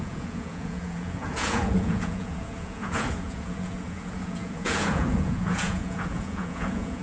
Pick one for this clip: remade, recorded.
remade